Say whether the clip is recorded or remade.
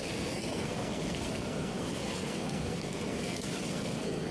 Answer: remade